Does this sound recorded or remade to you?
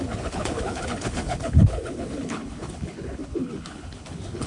remade